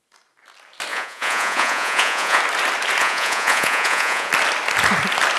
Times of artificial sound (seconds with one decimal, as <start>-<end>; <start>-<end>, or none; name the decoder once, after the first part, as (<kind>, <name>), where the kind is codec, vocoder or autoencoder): 0.9-2.4 (vocoder, Vocos); 3.0-4.3